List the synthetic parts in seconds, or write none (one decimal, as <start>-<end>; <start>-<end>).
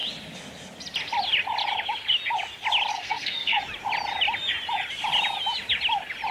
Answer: 2.9-3.6